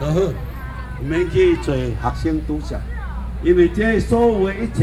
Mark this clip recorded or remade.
recorded